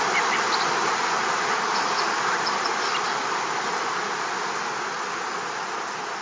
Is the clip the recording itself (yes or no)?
yes